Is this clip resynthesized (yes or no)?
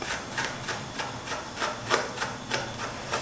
yes